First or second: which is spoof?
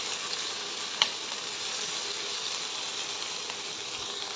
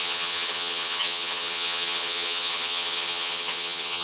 second